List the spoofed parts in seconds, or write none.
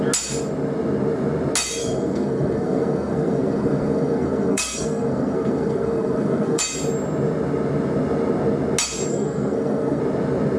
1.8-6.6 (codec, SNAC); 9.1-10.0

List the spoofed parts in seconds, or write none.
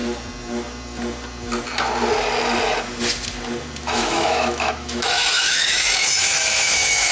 3.8-7.1 (autoencoder, DAC-VAE)